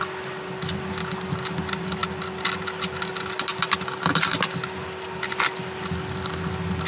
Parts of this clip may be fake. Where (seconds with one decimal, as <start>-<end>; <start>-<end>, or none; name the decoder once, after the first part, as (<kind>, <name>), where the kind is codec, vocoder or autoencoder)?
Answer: none